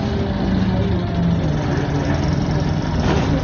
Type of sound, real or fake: real